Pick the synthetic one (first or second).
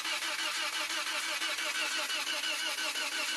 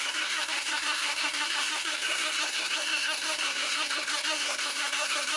second